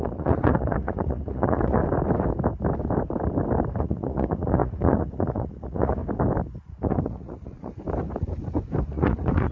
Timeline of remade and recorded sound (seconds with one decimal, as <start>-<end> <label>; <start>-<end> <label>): 0.0-1.8 remade; 1.8-3.8 recorded; 3.8-6.0 remade; 6.0-6.6 recorded; 6.6-7.7 remade; 7.7-8.9 recorded; 8.9-9.5 remade